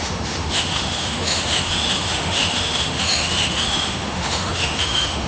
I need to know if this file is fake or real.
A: fake